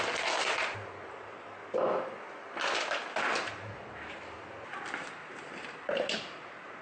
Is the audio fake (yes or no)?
no